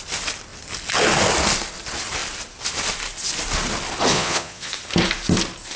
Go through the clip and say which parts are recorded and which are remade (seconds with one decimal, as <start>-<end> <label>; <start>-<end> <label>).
0.0-4.1 recorded; 4.1-4.7 remade; 4.7-5.8 recorded